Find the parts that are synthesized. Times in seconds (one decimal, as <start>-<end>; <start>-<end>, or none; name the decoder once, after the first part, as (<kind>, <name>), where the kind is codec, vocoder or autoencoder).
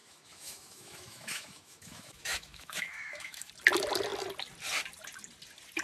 0.0-3.5 (autoencoder, DAC-VAE)